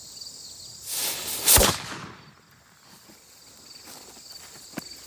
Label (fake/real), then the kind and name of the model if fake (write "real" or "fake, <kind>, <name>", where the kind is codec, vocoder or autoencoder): real